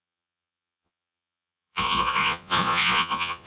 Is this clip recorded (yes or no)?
no